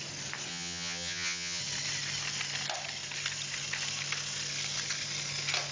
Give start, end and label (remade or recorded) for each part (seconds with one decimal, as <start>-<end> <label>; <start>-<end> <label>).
0.0-0.5 recorded; 0.5-1.6 remade; 1.6-5.7 recorded